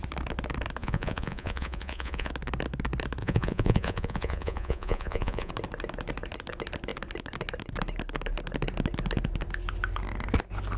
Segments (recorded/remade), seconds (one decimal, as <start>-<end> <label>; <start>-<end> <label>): 0.0-0.8 recorded; 0.8-2.3 remade; 2.3-3.2 recorded; 3.2-5.5 remade; 5.5-10.8 recorded